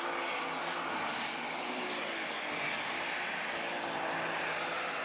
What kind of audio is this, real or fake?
real